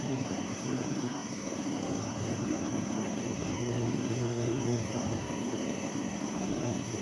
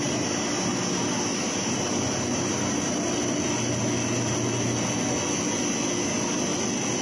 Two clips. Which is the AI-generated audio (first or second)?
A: first